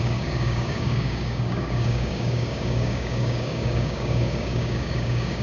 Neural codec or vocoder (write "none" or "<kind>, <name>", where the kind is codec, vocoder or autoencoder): codec, DAC